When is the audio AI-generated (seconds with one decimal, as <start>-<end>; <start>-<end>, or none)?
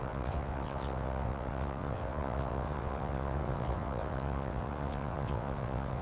0.0-6.0